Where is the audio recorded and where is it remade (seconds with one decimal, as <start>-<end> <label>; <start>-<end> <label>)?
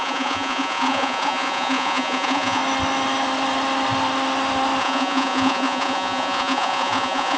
0.0-2.6 remade; 2.6-4.8 recorded; 4.8-7.4 remade